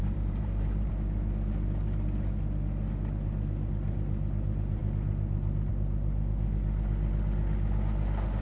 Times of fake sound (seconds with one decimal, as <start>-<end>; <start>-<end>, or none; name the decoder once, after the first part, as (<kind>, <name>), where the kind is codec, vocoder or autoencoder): 0.0-0.9 (vocoder, BigVGAN v2)